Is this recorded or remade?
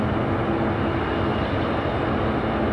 recorded